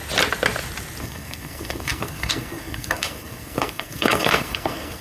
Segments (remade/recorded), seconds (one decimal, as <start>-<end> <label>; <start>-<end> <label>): 0.0-1.0 recorded; 1.0-5.0 remade